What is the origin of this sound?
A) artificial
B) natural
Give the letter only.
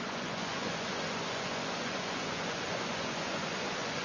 A